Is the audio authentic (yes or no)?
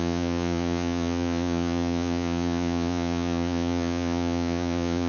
no